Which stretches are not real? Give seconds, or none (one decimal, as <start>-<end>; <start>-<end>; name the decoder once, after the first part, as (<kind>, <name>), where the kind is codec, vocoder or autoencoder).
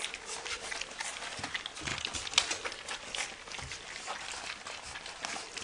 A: none